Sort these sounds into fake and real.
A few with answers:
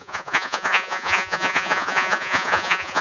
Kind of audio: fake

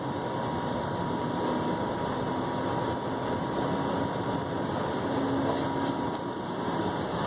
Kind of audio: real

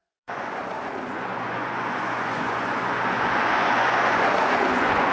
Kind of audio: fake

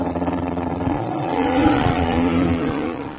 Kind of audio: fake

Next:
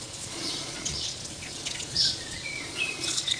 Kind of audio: fake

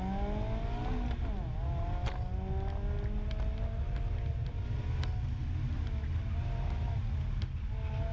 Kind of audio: real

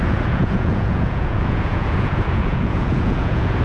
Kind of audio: fake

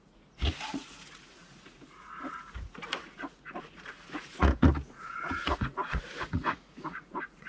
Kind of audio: fake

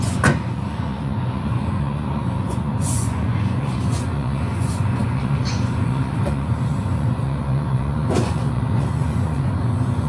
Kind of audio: fake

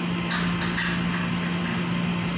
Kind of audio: real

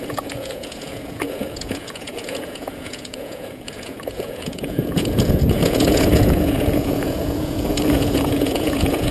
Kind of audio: fake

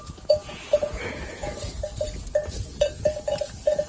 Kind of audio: fake